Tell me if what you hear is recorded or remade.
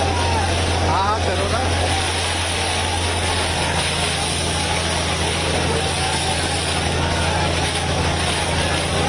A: recorded